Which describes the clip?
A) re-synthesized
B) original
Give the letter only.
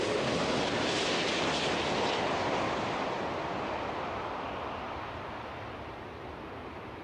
B